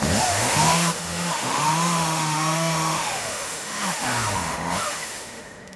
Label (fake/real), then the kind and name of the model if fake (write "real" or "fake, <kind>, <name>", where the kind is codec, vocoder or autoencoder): fake, autoencoder, DAC-VAE